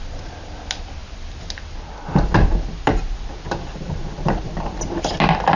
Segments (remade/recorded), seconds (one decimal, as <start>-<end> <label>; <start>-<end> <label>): 0.0-5.6 recorded